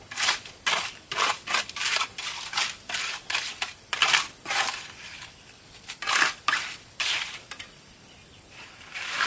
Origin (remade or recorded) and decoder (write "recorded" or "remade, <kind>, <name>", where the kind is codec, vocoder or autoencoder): remade, vocoder, BigVGAN v2